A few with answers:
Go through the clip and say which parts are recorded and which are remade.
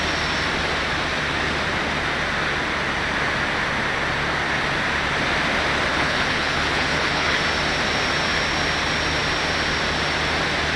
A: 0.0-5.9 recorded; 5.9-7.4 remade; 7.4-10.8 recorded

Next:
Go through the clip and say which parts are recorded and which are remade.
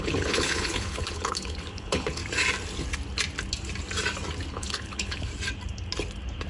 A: 0.0-2.2 remade; 2.2-4.5 recorded; 4.5-5.3 remade; 5.3-6.5 recorded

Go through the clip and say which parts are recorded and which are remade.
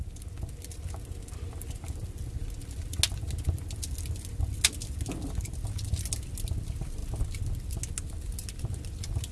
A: 0.0-9.3 recorded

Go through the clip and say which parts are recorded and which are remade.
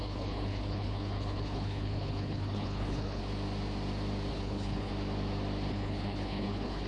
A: 0.0-3.2 remade; 3.2-4.3 recorded; 4.3-4.9 remade; 4.9-5.7 recorded; 5.7-6.9 remade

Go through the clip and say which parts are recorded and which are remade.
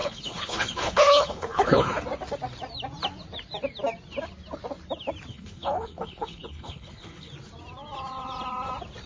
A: 0.0-2.0 remade; 2.0-5.3 recorded; 5.3-7.3 remade; 7.3-9.1 recorded